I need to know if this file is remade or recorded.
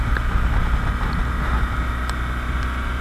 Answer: recorded